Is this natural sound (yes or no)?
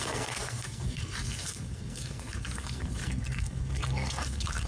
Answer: no